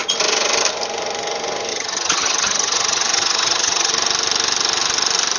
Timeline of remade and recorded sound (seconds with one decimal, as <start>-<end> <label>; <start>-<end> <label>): 0.0-1.7 recorded; 1.7-3.9 remade; 3.9-5.4 recorded

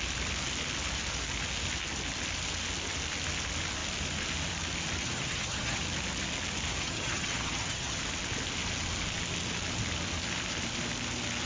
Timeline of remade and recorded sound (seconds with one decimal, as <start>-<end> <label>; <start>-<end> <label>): 0.0-5.0 recorded; 5.0-5.8 remade; 5.8-6.8 recorded; 6.8-8.0 remade; 8.0-11.5 recorded

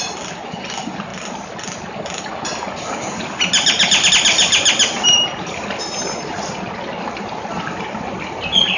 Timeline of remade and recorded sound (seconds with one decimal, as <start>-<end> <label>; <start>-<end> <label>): 0.0-8.8 recorded

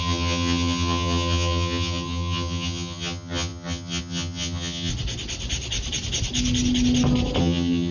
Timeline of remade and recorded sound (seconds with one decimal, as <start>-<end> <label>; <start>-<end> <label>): 0.0-4.9 remade; 4.9-7.4 recorded; 7.4-7.9 remade

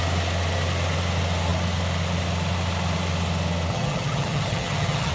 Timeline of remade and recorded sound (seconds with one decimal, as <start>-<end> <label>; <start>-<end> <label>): 0.0-3.7 recorded; 3.7-5.1 remade